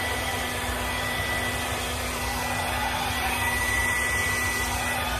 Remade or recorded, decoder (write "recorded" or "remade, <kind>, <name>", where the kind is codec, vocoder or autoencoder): recorded